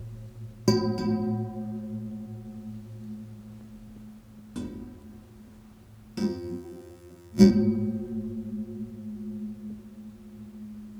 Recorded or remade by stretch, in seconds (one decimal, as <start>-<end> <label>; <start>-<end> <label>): 0.0-6.2 recorded; 6.2-7.5 remade; 7.5-11.0 recorded